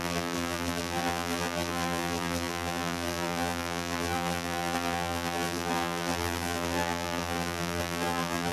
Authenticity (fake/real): fake